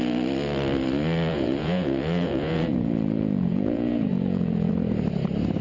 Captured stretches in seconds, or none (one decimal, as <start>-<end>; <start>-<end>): 0.0-1.3; 4.7-5.6